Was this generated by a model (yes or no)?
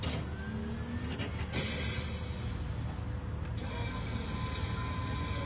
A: no